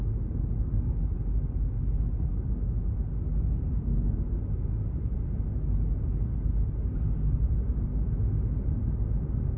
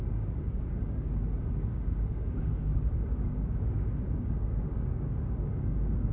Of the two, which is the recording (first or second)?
first